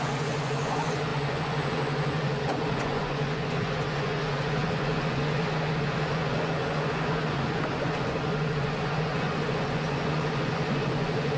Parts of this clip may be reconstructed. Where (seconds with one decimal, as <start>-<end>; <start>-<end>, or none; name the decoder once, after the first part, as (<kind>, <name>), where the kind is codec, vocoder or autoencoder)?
0.0-11.4 (vocoder, Vocos)